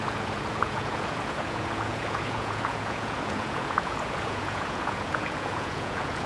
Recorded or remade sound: remade